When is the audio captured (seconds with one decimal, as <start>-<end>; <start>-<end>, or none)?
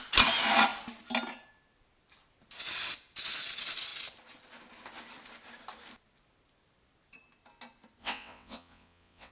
0.0-8.0